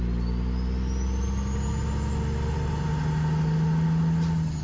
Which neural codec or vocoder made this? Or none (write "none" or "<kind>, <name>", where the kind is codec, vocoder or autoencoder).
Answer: none